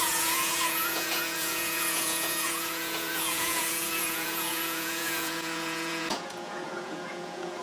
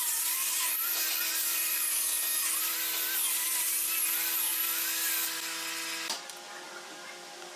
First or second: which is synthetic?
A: first